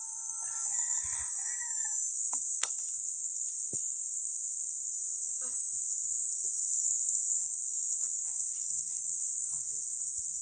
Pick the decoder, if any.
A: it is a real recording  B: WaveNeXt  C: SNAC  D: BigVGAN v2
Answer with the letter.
C